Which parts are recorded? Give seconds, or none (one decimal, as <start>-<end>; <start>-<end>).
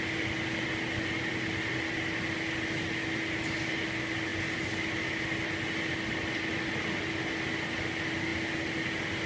0.0-9.3